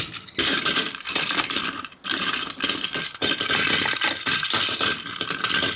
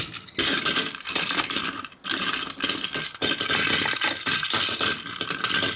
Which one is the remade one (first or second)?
first